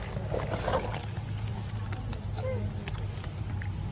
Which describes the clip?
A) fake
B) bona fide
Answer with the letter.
B